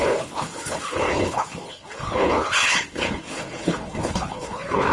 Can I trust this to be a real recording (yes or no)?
no